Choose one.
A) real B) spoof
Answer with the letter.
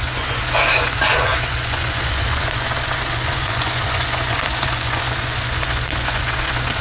B